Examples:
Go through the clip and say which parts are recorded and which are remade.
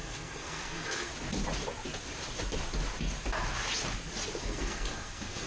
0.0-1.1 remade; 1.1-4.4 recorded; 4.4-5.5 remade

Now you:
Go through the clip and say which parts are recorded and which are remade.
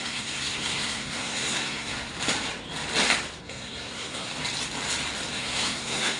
0.0-2.1 remade; 2.1-3.4 recorded; 3.4-4.3 remade; 4.3-5.3 recorded; 5.3-6.2 remade